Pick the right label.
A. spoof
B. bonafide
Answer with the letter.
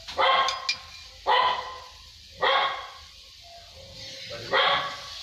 B